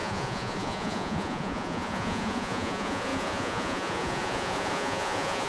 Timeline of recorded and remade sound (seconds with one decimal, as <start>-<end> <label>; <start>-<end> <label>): 0.0-5.5 remade

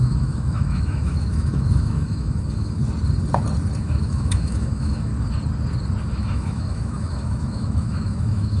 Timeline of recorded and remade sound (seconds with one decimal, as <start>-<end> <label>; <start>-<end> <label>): 0.0-2.8 remade; 2.8-3.8 recorded; 3.8-5.1 remade; 5.1-6.2 recorded; 6.2-8.6 remade

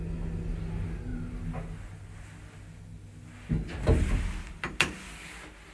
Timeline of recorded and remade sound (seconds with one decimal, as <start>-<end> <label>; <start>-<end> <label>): 0.0-5.7 recorded

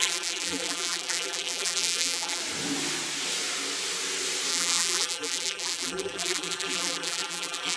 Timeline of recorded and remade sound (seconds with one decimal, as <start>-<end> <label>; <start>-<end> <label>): 0.0-2.4 remade; 2.4-4.5 recorded; 4.5-7.8 remade